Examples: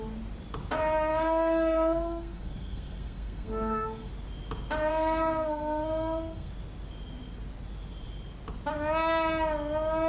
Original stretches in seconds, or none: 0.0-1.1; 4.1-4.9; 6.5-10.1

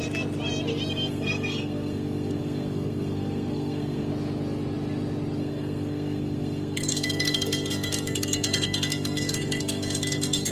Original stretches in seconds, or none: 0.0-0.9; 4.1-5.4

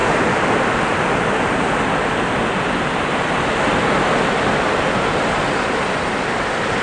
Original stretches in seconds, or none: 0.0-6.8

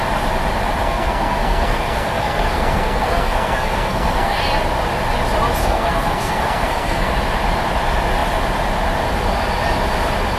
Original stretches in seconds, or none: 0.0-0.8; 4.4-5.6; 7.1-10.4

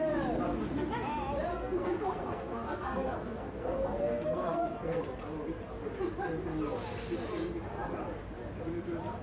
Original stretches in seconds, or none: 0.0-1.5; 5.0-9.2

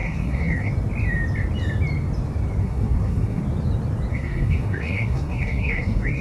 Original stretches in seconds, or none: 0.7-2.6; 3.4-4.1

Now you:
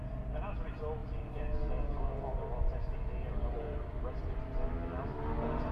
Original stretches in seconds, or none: 0.0-5.7